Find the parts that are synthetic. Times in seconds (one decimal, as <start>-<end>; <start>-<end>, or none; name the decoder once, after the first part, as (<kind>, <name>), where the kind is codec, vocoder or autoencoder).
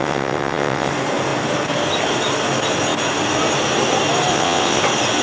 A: 0.0-0.9 (vocoder, WaveNeXt); 4.3-4.8